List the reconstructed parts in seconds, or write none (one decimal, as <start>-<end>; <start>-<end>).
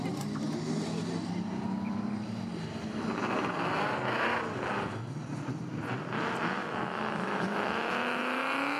6.6-8.8